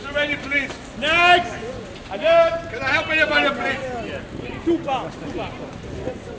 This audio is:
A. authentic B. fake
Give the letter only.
A